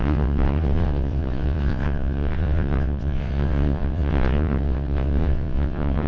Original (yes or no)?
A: no